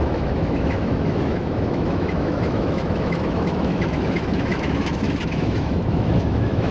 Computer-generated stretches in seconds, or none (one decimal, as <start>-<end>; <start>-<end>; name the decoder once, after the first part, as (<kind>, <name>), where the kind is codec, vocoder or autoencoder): 0.0-6.7 (autoencoder, DAC-VAE)